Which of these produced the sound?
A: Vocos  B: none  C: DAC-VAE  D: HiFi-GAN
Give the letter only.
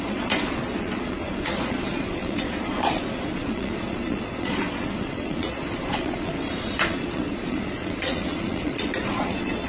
A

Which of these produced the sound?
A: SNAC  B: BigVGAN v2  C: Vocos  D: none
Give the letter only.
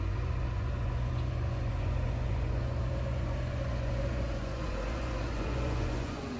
C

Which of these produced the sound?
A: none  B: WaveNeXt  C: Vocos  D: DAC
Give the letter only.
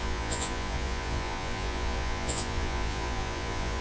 C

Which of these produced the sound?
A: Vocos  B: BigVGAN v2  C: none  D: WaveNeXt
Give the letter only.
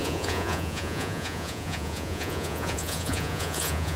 A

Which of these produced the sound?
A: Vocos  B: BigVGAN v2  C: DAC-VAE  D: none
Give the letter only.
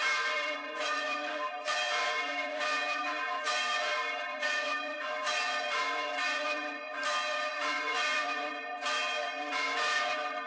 A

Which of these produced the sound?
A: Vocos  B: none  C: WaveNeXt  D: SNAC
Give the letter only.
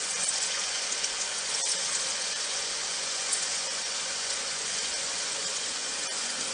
A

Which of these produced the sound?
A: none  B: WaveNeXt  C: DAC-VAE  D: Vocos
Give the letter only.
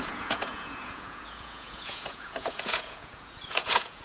D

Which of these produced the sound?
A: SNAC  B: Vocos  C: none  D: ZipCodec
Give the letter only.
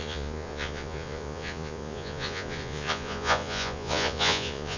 B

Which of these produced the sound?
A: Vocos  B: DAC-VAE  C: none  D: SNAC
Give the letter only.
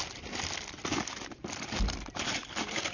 C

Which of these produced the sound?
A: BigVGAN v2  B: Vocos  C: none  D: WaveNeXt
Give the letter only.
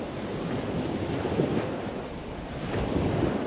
C